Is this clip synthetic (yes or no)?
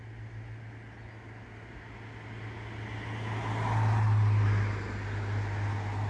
no